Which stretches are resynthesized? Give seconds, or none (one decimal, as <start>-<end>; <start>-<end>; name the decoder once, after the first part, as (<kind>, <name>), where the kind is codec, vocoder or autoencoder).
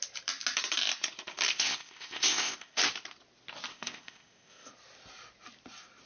1.5-2.8 (codec, ZipCodec); 3.7-4.7